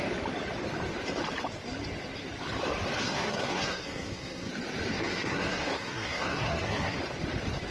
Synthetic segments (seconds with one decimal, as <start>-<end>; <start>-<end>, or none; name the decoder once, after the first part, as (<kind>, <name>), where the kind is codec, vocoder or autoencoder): 3.0-4.5 (codec, SNAC); 4.9-7.0